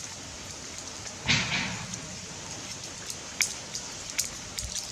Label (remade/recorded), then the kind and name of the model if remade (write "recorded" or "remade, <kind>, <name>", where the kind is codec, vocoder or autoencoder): recorded